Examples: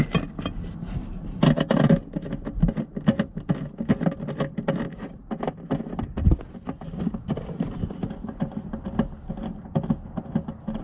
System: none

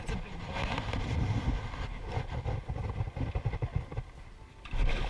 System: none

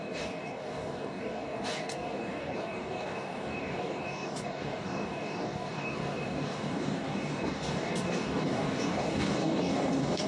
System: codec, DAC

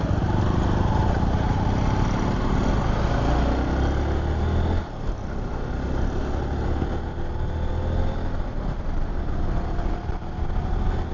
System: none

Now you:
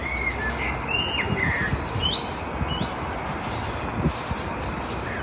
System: none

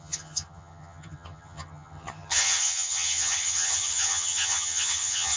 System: vocoder, HiFi-GAN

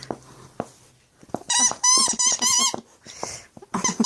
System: none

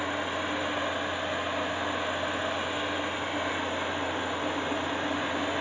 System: none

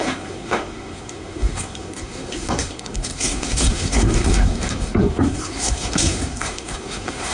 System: codec, SNAC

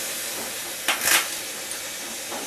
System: none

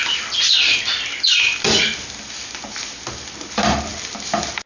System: vocoder, BigVGAN v2